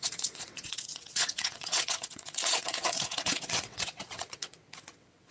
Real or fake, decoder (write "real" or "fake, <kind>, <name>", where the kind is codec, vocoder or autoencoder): fake, vocoder, WaveNeXt